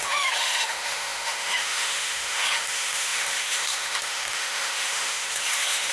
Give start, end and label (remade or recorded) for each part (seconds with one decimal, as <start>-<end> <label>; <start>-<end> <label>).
0.0-5.9 remade